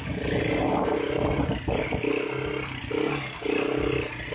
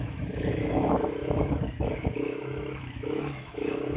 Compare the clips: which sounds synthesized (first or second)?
second